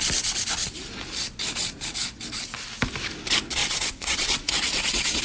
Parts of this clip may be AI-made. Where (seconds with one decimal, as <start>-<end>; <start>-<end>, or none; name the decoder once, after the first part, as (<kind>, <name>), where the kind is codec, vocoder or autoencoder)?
3.6-5.2 (vocoder, WaveNeXt)